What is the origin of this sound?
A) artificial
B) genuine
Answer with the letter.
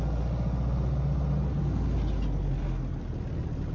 B